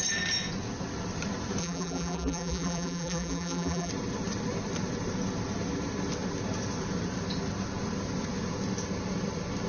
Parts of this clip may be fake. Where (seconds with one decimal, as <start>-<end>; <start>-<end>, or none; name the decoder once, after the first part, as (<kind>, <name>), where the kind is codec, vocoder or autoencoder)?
1.6-3.9 (vocoder, BigVGAN v2)